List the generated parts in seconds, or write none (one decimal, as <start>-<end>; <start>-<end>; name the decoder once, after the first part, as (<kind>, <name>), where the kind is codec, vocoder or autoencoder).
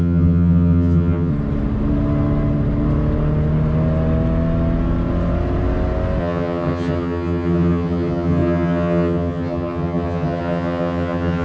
0.0-1.3 (vocoder, HiFi-GAN); 6.2-11.4